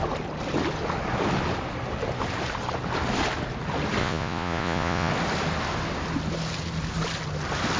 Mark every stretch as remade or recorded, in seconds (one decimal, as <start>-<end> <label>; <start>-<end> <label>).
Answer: 0.0-4.0 recorded; 4.0-5.1 remade; 5.1-7.8 recorded